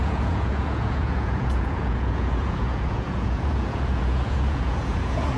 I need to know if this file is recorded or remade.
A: remade